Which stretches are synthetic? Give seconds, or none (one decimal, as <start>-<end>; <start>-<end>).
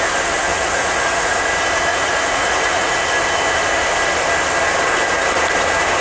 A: 0.5-1.4; 1.9-2.9